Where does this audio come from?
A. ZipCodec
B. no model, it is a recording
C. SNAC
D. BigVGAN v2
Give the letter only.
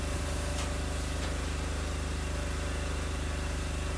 D